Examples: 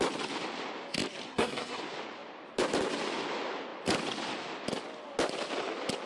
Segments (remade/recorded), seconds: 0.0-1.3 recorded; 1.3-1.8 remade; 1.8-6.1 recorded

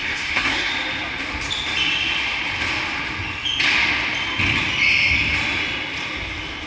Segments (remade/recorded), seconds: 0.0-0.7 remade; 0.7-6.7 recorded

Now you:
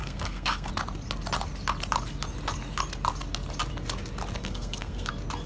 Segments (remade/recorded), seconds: 0.0-0.7 remade; 0.7-4.4 recorded; 4.4-5.1 remade; 5.1-5.5 recorded

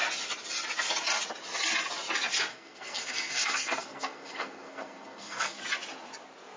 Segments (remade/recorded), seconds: 0.0-2.5 recorded; 2.5-5.6 remade; 5.6-6.6 recorded

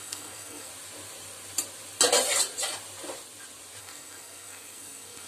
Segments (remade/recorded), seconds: 0.0-0.7 remade; 0.7-3.8 recorded; 3.8-5.3 remade

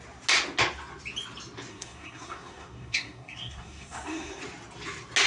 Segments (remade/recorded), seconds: 0.0-1.7 recorded; 1.7-4.4 remade; 4.4-5.3 recorded